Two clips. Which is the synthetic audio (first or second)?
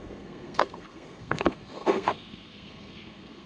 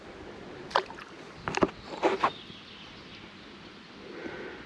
first